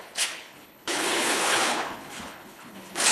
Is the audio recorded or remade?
remade